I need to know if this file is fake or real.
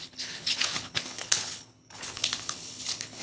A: fake